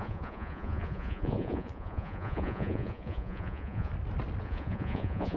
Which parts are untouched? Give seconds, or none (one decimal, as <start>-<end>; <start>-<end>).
3.9-4.4